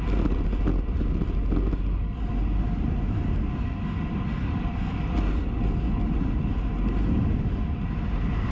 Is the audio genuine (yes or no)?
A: yes